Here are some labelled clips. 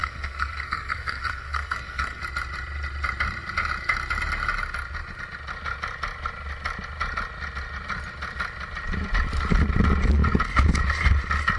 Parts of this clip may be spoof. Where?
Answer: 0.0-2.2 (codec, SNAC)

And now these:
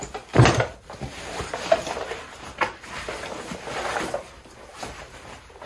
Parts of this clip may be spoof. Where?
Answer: none

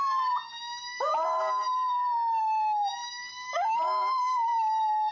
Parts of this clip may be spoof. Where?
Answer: none

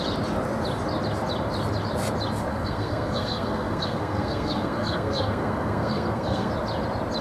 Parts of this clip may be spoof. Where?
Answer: 2.5-6.5 (codec, SNAC)

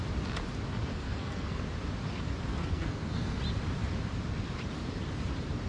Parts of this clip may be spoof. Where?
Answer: 0.9-1.6 (codec, SNAC); 2.5-3.4

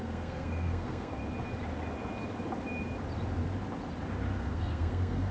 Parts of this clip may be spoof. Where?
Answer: 0.0-1.2 (codec, SNAC); 4.4-5.3

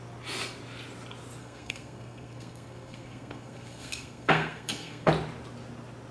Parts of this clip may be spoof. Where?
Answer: 1.4-5.1 (codec, SNAC)